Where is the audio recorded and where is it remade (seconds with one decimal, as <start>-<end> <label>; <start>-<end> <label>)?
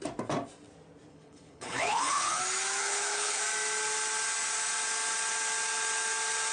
0.0-1.1 recorded; 1.1-2.4 remade; 2.4-2.8 recorded; 2.8-3.4 remade; 3.4-6.5 recorded